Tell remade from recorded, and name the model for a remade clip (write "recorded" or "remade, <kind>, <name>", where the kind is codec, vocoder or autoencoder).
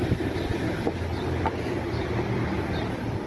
remade, vocoder, BigVGAN v2